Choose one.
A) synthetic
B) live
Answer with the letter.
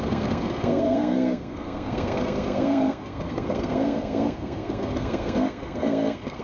A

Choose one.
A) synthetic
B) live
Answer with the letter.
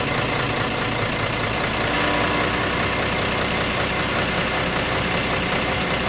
B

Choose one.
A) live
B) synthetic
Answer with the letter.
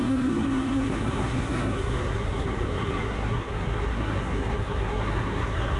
B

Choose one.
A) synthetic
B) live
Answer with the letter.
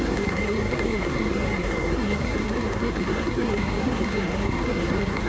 A